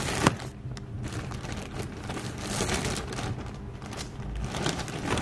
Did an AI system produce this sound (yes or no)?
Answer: no